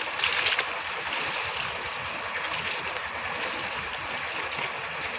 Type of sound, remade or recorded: recorded